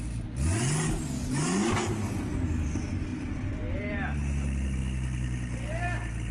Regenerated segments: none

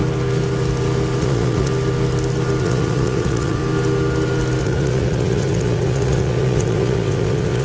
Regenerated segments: 1.2-1.7 (vocoder, Vocos); 2.6-3.6; 4.6-7.6

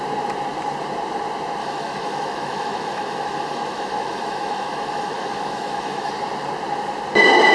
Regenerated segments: 1.6-6.1 (autoencoder, DAC-VAE)

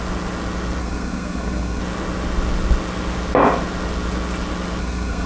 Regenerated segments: 0.8-1.8 (codec, SNAC); 4.8-5.3

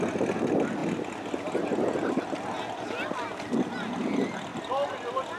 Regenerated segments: none